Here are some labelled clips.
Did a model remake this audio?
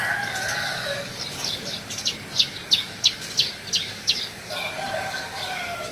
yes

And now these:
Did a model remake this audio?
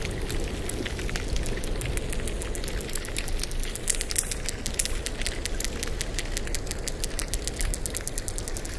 no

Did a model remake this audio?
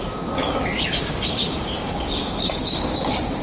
yes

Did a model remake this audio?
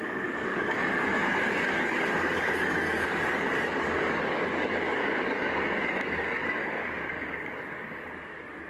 yes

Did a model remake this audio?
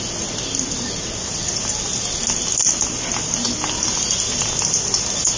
no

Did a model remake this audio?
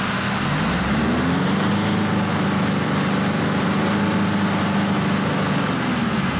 no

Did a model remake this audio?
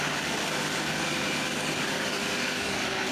yes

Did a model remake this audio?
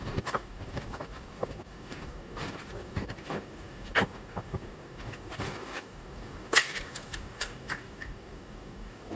yes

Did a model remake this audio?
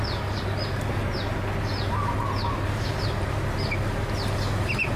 no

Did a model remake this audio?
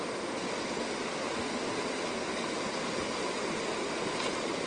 no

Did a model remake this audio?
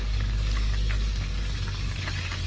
yes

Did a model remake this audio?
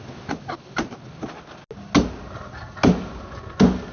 no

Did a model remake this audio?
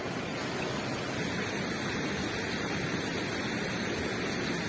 no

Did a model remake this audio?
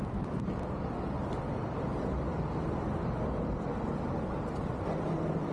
no